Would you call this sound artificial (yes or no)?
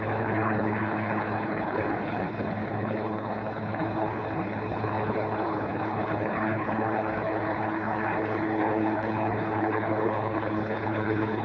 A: yes